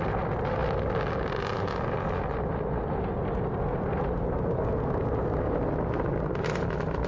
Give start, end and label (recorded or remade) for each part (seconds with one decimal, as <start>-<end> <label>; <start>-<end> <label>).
0.0-7.1 recorded